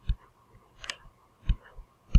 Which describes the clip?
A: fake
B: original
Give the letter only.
B